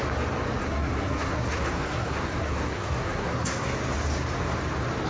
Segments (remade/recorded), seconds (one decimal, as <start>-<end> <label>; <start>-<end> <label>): 0.0-0.6 recorded; 0.6-3.7 remade; 3.7-5.1 recorded